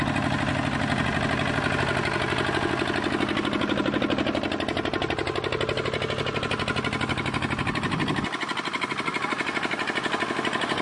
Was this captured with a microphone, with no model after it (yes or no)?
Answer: yes